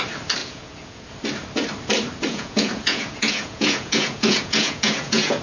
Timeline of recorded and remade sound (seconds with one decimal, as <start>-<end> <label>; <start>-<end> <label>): 0.0-0.4 recorded; 0.4-1.1 remade; 1.1-2.3 recorded; 2.3-5.4 remade